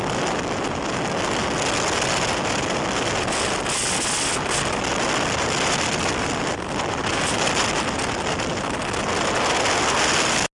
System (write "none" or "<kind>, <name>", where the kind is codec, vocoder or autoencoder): none